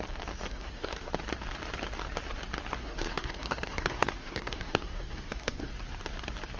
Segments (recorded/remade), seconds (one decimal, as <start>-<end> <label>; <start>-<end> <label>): 0.0-0.5 recorded; 0.5-1.1 remade; 1.1-2.8 recorded; 2.8-5.7 remade; 5.7-6.6 recorded